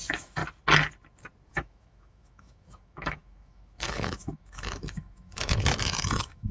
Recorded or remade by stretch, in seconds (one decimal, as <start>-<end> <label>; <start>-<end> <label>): 0.0-0.4 remade; 0.4-1.5 recorded; 1.5-6.5 remade